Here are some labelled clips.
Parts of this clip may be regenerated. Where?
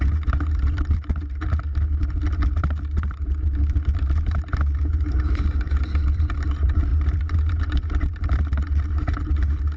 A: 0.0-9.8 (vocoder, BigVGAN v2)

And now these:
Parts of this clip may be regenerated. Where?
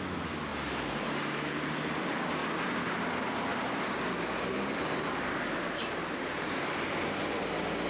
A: 0.5-1.1 (vocoder, BigVGAN v2); 3.5-6.7